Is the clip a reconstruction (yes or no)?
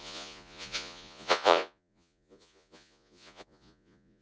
yes